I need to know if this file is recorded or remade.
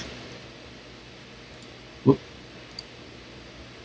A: recorded